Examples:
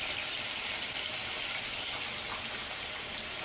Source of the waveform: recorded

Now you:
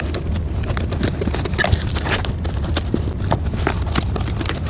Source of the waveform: recorded